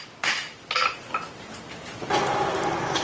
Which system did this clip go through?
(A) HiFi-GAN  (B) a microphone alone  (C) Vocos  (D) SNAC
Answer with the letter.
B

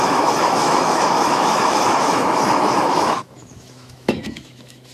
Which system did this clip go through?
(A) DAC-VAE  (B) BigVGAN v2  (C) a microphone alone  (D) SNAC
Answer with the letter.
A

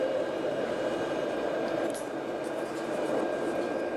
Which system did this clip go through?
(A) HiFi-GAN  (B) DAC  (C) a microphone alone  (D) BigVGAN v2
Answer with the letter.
C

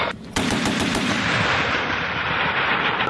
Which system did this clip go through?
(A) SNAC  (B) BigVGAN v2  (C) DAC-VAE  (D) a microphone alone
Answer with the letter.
B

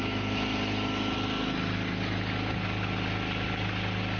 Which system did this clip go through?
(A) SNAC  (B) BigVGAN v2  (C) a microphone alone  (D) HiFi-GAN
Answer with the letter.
C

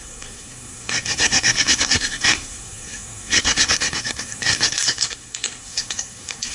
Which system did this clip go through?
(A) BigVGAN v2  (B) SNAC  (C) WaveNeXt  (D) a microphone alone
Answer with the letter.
B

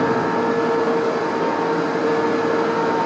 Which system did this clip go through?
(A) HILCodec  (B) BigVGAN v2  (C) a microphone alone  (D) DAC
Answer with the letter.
C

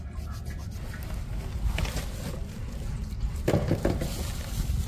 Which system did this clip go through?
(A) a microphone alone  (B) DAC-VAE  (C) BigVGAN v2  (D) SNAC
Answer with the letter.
A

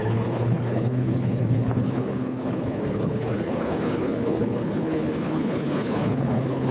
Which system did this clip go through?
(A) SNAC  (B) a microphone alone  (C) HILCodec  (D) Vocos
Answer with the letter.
C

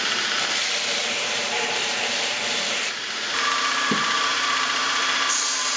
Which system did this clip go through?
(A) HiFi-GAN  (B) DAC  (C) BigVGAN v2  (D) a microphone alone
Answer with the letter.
C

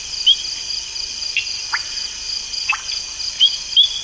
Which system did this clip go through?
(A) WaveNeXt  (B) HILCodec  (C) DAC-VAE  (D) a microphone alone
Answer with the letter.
D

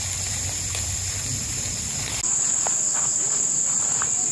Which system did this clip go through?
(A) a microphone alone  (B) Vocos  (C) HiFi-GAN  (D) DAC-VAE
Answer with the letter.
A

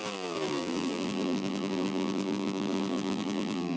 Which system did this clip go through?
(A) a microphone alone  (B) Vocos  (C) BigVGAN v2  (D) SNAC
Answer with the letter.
C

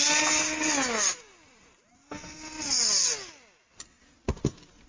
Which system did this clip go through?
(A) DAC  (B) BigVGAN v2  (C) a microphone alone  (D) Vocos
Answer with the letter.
C